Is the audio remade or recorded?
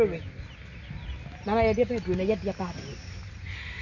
recorded